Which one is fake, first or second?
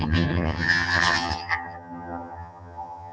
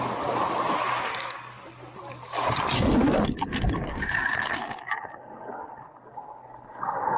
first